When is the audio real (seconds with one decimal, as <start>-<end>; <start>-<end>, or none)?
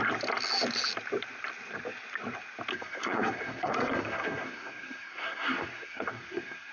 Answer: 0.0-2.7